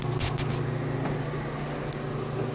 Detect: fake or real real